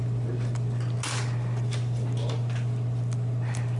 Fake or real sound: real